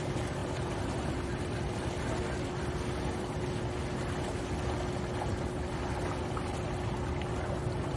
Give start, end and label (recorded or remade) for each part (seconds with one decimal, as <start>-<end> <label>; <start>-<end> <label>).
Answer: 0.0-0.4 recorded; 0.4-1.9 remade; 1.9-8.0 recorded